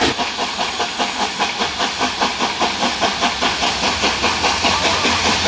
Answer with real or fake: real